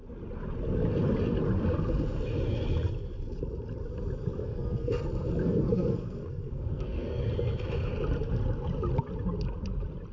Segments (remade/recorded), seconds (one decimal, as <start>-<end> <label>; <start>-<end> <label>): 0.0-4.4 recorded; 4.4-5.0 remade; 5.0-5.4 recorded; 5.4-7.2 remade; 7.2-10.1 recorded